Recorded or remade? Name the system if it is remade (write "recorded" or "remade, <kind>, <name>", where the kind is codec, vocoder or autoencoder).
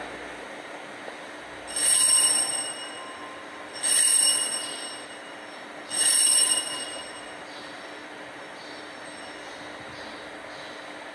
recorded